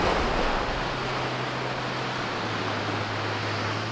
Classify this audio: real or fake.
real